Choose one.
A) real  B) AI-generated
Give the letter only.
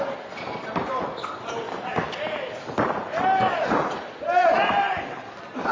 A